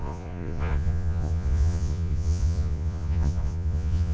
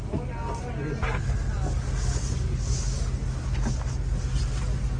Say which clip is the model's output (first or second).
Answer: first